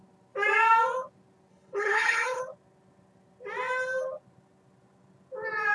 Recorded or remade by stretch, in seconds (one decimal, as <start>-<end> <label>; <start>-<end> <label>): 0.0-1.5 recorded; 1.5-2.4 remade; 2.4-5.7 recorded